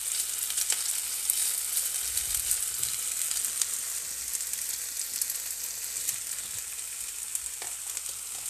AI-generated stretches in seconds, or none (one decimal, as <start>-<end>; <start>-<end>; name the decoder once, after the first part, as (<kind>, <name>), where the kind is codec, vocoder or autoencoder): none